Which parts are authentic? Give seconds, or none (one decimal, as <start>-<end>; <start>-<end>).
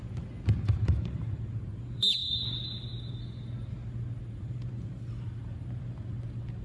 0.0-0.6; 2.2-4.2